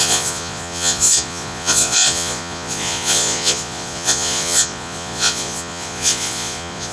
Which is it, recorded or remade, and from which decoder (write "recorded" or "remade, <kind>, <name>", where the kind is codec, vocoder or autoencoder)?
remade, vocoder, Vocos